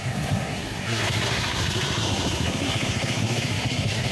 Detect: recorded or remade remade